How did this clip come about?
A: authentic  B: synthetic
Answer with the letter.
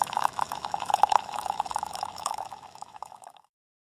B